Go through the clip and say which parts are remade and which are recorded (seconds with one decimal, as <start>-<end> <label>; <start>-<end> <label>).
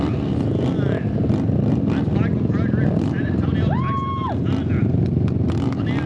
0.0-6.1 recorded